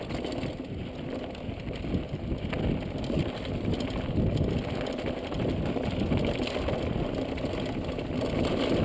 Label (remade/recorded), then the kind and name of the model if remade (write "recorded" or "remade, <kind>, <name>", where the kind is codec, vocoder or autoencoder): recorded